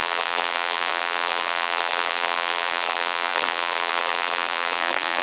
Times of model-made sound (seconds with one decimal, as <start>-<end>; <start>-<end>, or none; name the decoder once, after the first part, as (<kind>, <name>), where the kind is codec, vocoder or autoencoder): 0.0-5.2 (vocoder, BigVGAN v2)